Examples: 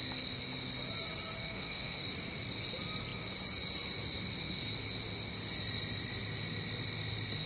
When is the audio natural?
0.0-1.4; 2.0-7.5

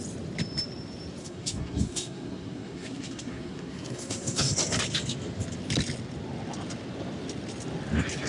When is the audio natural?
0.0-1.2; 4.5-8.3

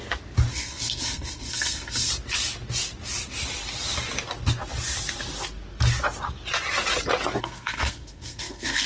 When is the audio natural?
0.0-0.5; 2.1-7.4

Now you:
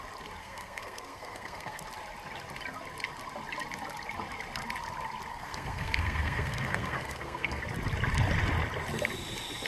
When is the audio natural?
0.0-0.4; 1.8-5.3; 7.6-9.7

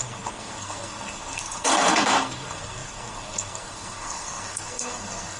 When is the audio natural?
none